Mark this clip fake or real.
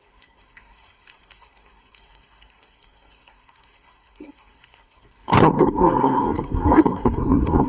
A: fake